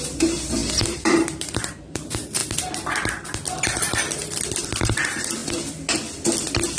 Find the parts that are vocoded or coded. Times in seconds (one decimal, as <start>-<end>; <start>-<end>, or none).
0.0-2.4; 4.8-5.4